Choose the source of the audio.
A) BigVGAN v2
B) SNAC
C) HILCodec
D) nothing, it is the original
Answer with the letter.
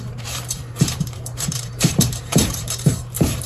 A